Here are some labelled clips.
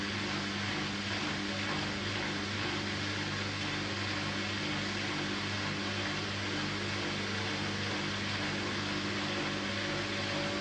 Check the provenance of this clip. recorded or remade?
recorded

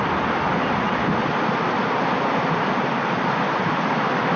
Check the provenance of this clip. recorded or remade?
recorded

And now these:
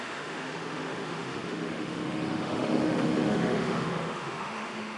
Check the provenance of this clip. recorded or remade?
remade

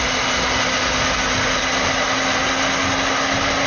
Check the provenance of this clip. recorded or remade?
recorded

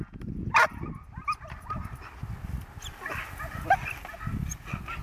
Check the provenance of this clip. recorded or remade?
recorded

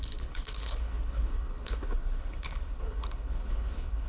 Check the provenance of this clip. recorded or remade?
remade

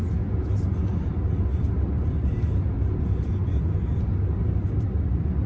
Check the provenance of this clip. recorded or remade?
recorded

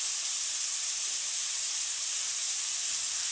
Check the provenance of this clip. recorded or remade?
remade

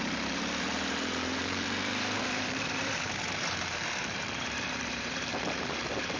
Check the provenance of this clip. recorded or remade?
remade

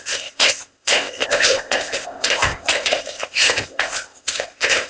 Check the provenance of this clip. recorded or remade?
remade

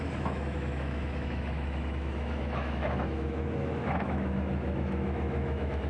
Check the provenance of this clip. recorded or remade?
remade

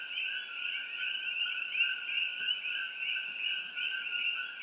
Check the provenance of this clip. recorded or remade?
remade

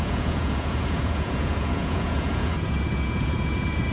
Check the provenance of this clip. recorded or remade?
remade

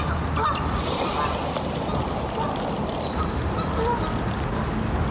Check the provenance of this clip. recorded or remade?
recorded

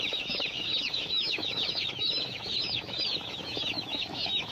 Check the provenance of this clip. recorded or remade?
remade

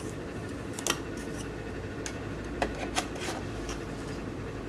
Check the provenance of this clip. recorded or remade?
recorded